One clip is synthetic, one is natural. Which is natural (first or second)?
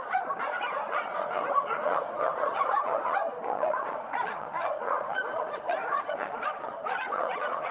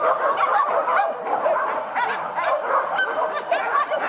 second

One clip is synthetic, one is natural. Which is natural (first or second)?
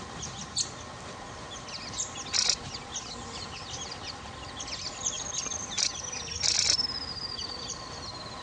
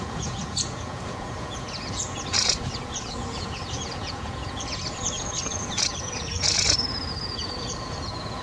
first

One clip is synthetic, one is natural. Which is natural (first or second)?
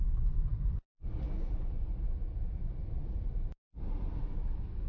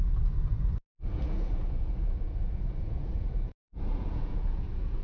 first